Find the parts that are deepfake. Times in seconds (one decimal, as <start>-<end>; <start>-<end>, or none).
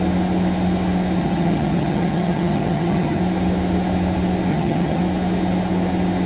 1.2-3.2; 4.5-5.0